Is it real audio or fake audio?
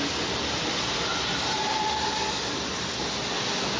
real